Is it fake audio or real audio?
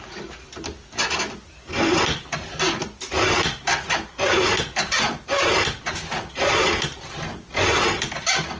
real